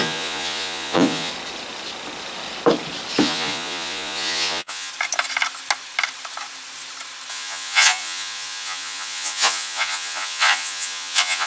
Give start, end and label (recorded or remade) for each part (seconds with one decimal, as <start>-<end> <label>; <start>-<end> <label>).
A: 0.0-1.3 remade; 1.3-3.2 recorded; 3.2-4.9 remade; 4.9-7.3 recorded; 7.3-11.5 remade